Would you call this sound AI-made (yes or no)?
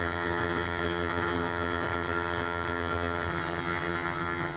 yes